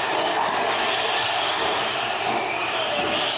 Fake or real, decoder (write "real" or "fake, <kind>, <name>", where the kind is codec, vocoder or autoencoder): real